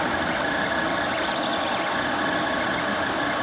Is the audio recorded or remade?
recorded